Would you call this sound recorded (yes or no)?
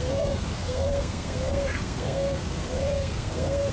no